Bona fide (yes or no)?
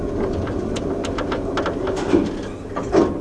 yes